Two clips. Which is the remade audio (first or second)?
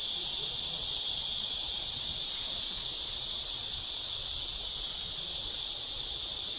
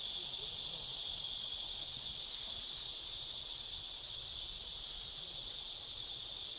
first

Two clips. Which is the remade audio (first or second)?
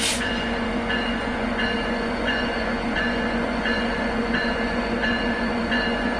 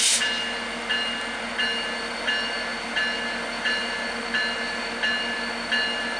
first